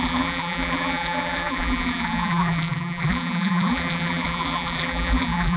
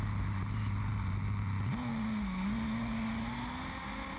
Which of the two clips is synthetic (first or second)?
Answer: first